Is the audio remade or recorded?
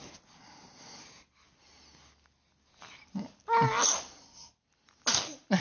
recorded